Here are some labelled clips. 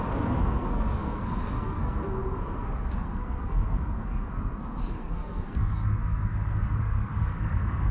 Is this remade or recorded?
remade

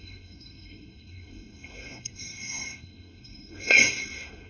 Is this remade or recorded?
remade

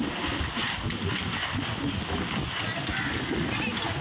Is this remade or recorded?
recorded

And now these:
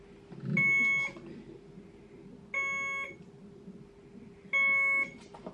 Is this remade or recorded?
recorded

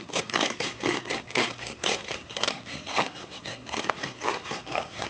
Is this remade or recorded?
remade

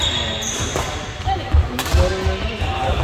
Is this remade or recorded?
recorded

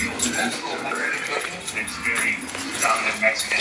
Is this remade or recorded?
recorded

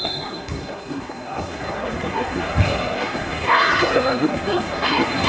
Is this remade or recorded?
remade